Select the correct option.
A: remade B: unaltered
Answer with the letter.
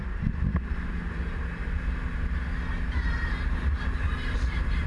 B